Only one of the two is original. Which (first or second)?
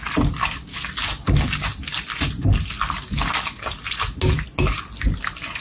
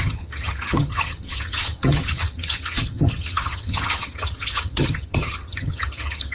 first